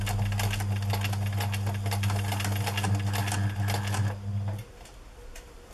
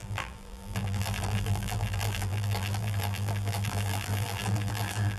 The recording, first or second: first